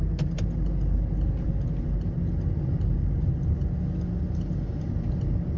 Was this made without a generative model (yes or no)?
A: yes